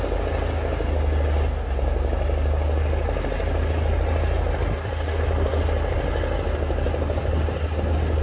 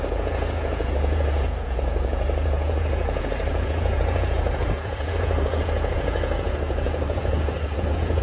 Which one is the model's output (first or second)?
second